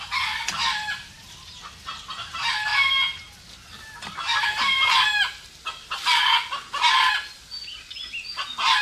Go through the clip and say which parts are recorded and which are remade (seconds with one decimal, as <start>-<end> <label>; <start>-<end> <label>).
0.0-8.8 recorded